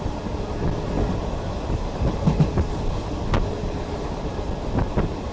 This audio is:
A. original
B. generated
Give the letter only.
A